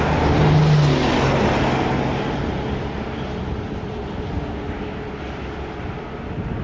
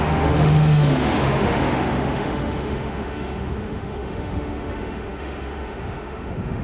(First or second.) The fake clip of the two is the second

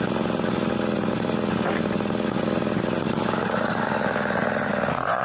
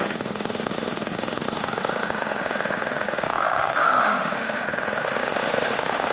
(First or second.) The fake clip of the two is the second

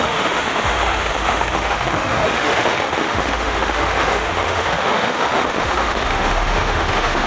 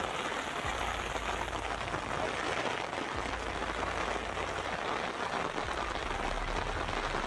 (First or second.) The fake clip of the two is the first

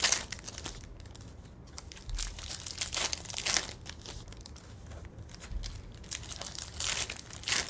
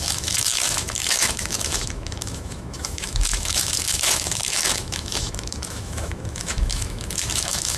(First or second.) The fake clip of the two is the second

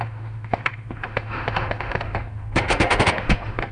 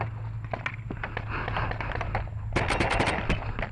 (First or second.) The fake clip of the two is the first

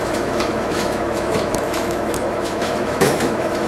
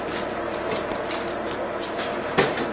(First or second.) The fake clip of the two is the first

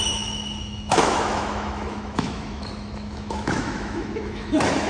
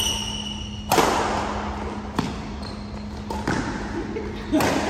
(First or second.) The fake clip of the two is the first